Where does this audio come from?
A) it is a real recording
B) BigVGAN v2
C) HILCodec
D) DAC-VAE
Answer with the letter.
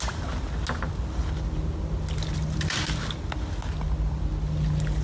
A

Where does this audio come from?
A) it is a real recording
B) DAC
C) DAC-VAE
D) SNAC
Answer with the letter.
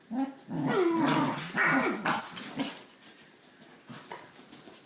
A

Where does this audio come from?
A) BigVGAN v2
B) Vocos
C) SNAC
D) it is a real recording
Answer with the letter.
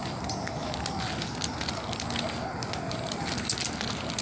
D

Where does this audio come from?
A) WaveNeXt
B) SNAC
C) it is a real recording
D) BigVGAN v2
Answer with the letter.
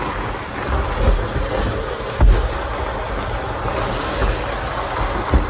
C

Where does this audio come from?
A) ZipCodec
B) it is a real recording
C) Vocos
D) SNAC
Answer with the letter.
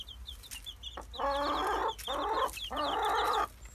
B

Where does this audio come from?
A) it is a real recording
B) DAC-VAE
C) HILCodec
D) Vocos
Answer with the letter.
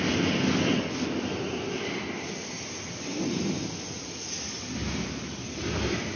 A